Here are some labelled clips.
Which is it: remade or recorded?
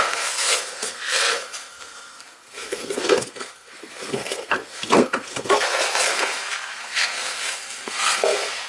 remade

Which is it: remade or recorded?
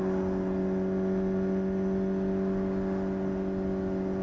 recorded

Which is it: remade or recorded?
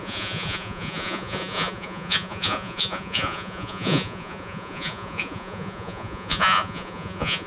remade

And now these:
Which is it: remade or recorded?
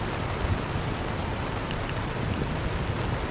recorded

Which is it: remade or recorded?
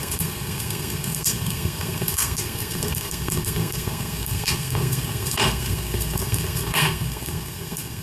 remade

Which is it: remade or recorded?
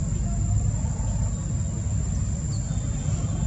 recorded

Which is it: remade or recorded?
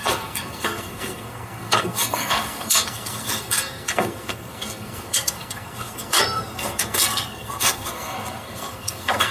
remade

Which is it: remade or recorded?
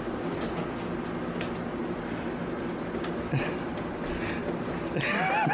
recorded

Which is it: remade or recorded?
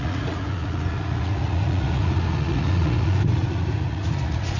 remade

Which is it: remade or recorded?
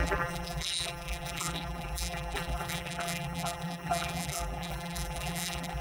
remade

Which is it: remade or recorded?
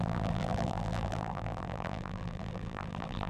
remade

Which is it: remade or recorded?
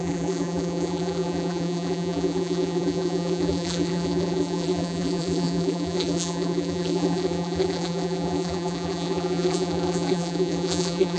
remade